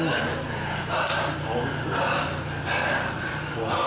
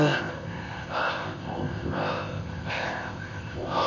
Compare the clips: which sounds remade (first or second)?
second